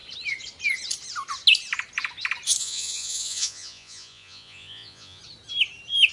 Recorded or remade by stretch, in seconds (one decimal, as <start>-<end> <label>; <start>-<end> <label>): 0.0-2.6 recorded; 2.6-5.2 remade; 5.2-6.1 recorded